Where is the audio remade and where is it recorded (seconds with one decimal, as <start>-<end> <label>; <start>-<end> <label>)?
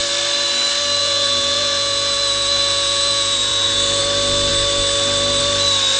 0.0-1.0 recorded; 1.0-4.0 remade; 4.0-6.0 recorded